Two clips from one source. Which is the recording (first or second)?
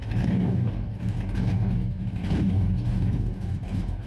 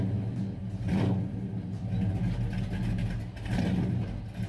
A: second